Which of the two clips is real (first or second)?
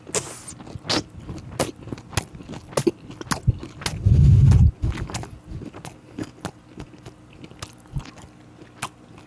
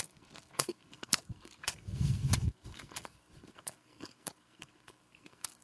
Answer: first